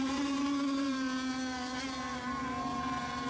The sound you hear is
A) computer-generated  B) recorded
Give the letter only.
A